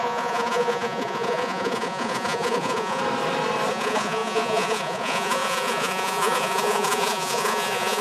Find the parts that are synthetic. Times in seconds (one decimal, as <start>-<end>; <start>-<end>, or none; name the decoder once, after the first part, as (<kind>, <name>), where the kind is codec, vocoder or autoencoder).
0.0-3.0 (vocoder, Vocos); 3.7-8.0